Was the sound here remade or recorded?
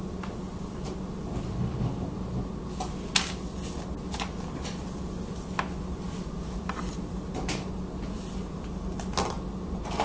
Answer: recorded